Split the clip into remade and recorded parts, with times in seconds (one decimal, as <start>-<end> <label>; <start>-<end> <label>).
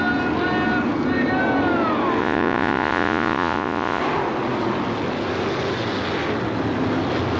0.0-2.2 recorded; 2.2-4.0 remade; 4.0-7.4 recorded